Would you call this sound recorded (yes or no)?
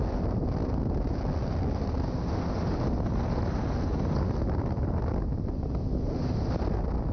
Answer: yes